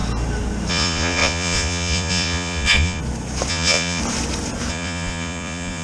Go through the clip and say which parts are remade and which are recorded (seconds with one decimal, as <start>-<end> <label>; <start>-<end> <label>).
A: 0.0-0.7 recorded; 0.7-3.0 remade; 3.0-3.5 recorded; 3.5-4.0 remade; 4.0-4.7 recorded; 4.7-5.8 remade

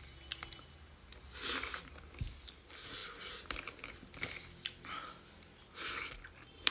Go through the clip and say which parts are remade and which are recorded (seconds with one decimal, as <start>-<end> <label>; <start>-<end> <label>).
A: 0.0-6.7 recorded

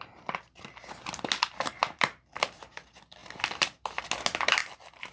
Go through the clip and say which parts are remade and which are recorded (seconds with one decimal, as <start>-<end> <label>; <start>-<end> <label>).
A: 0.0-1.8 recorded; 1.8-2.7 remade; 2.7-4.6 recorded; 4.6-5.1 remade

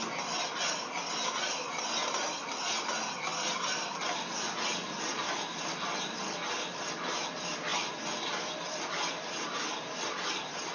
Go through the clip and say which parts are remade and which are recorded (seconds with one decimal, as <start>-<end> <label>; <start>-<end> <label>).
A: 0.0-10.7 recorded

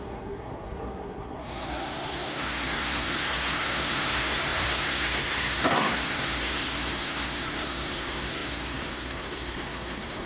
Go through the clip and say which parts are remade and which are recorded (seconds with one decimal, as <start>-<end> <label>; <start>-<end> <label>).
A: 0.0-10.3 remade

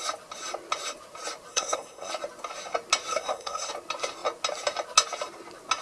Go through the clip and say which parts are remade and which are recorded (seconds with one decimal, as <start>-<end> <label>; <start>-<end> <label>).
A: 0.0-1.5 recorded; 1.5-2.1 remade; 2.1-3.1 recorded; 3.1-3.7 remade; 3.7-5.8 recorded